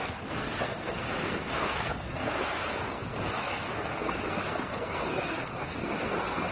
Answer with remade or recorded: remade